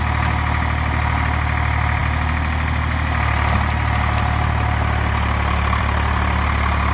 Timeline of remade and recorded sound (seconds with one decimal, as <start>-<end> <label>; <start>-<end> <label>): 0.0-6.9 recorded